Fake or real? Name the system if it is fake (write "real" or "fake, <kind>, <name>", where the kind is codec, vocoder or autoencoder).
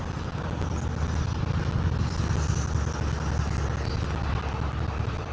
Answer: real